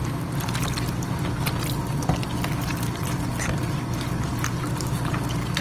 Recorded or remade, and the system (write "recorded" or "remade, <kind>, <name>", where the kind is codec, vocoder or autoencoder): recorded